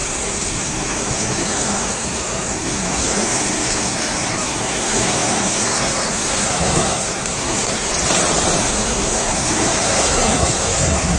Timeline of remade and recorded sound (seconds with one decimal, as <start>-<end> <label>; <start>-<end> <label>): 0.0-7.9 remade; 7.9-8.6 recorded; 8.6-11.2 remade